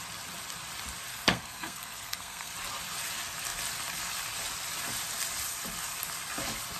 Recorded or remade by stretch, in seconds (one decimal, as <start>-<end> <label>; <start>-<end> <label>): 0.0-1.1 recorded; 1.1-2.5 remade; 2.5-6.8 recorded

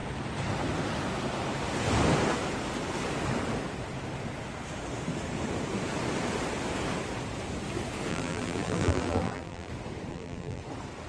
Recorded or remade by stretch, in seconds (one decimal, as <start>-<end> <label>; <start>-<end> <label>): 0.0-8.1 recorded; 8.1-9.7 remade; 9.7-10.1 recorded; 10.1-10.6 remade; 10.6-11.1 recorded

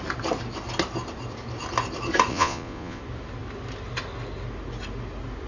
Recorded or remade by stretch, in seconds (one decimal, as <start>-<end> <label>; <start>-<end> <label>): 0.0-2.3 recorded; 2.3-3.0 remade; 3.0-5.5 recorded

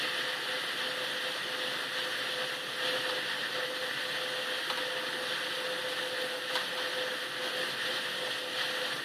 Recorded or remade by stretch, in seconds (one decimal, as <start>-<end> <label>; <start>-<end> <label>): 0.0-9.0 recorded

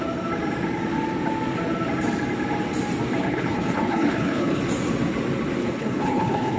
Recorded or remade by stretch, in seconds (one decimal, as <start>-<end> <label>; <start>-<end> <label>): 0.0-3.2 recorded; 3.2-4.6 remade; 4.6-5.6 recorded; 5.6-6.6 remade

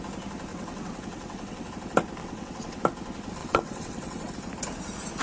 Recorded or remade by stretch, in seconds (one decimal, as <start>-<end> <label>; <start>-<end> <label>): 0.0-0.5 recorded; 0.5-1.7 remade; 1.7-2.2 recorded; 2.2-2.8 remade; 2.8-3.4 recorded; 3.4-4.3 remade; 4.3-5.2 recorded

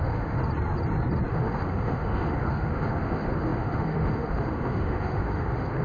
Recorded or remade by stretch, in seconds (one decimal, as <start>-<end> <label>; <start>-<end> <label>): 0.0-0.4 remade; 0.4-1.3 recorded; 1.3-5.8 remade

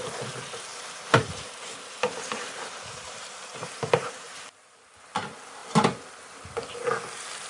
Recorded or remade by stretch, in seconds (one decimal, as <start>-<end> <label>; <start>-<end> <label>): 0.0-0.7 recorded; 0.7-4.5 remade; 4.5-7.5 recorded